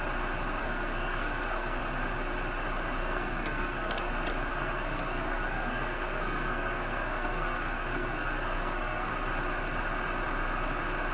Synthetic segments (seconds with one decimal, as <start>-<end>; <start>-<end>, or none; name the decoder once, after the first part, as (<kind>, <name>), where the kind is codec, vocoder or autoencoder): 0.6-1.8 (codec, SNAC); 3.0-4.1; 4.5-9.1